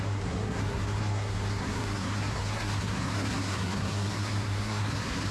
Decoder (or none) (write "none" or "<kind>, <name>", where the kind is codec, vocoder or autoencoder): codec, SNAC